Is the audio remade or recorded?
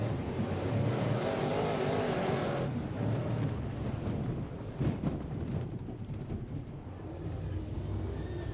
recorded